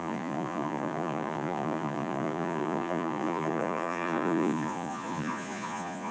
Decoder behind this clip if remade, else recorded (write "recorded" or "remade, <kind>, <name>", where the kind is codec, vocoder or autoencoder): remade, vocoder, Vocos